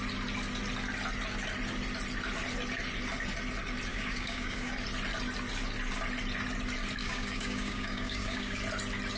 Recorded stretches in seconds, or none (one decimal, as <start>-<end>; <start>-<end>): 0.0-3.9; 4.7-7.0; 8.6-9.2